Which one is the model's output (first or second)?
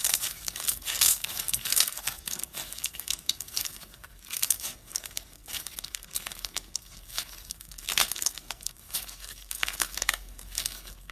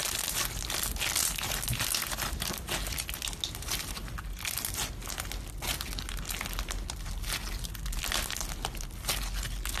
first